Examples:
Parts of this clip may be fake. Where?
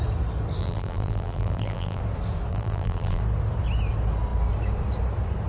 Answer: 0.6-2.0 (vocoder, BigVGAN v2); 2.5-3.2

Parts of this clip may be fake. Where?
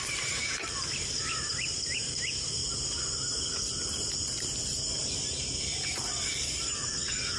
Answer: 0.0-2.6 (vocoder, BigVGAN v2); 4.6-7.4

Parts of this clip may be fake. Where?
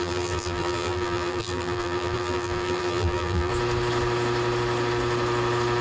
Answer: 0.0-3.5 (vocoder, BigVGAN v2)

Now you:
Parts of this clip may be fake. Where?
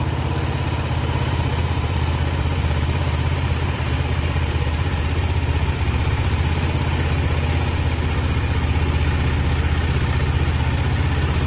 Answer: 1.6-6.1 (vocoder, BigVGAN v2)